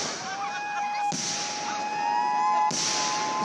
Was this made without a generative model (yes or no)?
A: yes